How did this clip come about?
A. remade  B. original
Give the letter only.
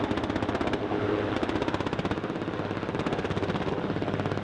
B